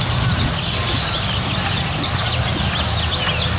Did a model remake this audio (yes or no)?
no